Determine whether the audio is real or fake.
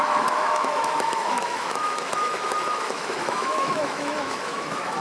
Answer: fake